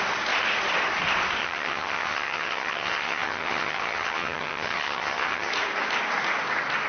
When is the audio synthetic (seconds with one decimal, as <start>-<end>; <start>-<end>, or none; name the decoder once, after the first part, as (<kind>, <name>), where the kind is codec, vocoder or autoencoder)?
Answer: 1.4-5.5 (vocoder, HiFi-GAN)